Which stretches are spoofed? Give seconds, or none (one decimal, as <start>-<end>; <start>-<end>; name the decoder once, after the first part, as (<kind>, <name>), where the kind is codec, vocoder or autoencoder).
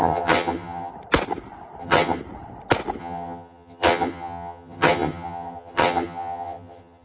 0.0-0.9 (vocoder, HiFi-GAN); 1.8-2.2; 3.0-7.0